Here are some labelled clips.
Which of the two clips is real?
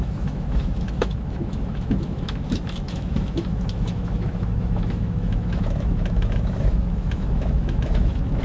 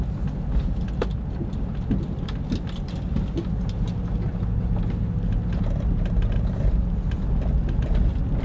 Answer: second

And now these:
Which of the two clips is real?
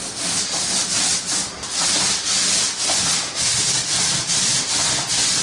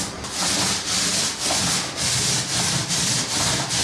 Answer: second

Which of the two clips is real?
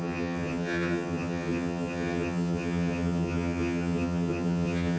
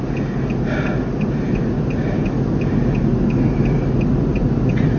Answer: second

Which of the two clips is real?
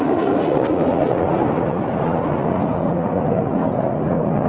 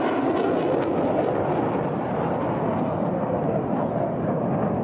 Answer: second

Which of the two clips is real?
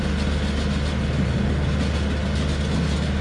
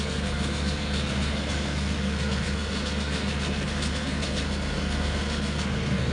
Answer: first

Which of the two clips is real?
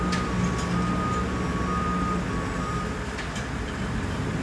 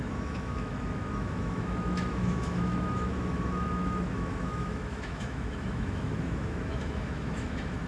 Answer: first